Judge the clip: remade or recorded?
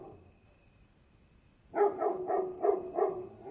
recorded